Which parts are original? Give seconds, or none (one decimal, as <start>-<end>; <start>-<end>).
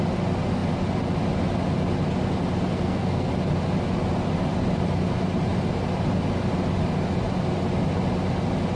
0.0-2.7; 3.3-8.8